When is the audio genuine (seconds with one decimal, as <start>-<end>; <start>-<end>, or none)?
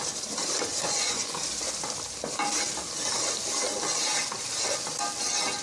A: 0.0-0.7; 1.4-5.6